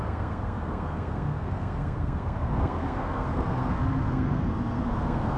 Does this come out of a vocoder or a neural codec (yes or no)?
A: yes